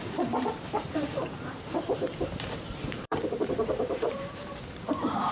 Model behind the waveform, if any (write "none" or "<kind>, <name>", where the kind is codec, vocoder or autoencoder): vocoder, BigVGAN v2